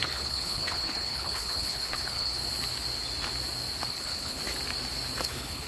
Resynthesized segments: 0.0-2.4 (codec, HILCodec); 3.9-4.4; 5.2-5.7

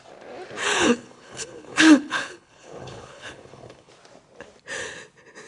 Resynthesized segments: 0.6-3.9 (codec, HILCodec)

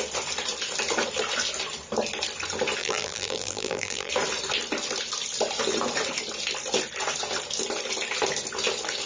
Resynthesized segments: 2.8-4.1 (vocoder, BigVGAN v2)

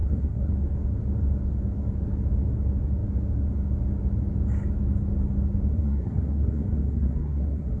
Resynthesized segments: 0.0-0.5 (codec, SNAC); 5.7-7.8

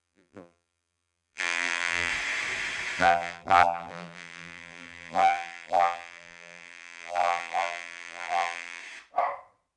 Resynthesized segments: 0.0-2.1 (vocoder, BigVGAN v2); 3.0-8.8

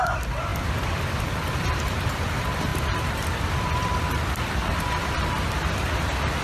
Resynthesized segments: 2.7-5.6 (vocoder, BigVGAN v2)